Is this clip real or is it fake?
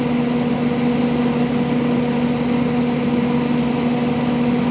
real